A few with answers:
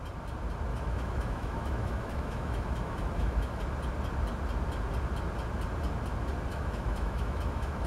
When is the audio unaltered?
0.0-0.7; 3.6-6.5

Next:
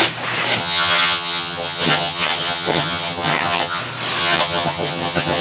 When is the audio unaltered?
0.0-0.6; 3.8-4.2

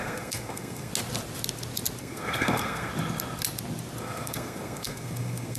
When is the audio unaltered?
0.9-2.0; 2.9-4.0

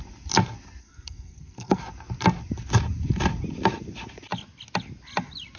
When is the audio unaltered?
0.0-0.8; 1.8-5.6

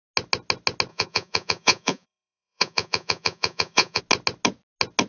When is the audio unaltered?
0.0-0.9; 4.0-5.1